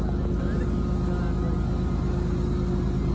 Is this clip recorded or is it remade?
recorded